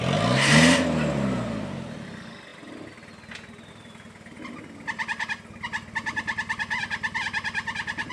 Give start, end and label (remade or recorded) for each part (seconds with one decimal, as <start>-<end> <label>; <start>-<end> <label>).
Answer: 0.0-8.1 recorded